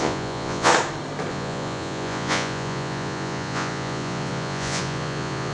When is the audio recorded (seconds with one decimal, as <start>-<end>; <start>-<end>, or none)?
0.7-1.3